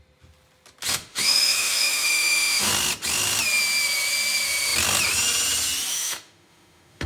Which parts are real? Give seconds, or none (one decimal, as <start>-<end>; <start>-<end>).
0.0-0.9; 2.7-5.9